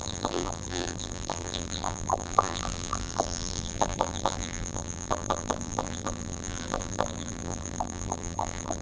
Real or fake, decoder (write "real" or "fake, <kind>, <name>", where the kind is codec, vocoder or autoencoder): fake, vocoder, BigVGAN v2